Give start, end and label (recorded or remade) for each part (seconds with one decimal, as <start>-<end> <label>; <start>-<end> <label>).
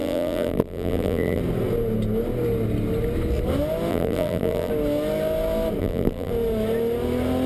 0.0-1.4 remade; 1.4-3.9 recorded; 3.9-4.7 remade; 4.7-5.8 recorded; 5.8-6.3 remade; 6.3-7.5 recorded